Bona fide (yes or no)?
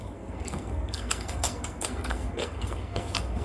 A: no